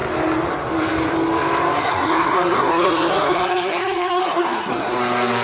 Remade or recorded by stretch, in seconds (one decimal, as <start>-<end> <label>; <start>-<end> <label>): 0.0-1.8 recorded; 1.8-5.0 remade; 5.0-5.4 recorded